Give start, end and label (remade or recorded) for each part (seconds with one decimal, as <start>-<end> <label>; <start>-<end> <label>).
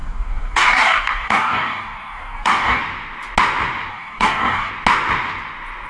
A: 0.0-2.8 remade; 2.8-3.9 recorded; 3.9-4.7 remade; 4.7-5.9 recorded